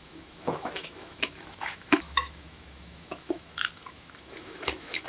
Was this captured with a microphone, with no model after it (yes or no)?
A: no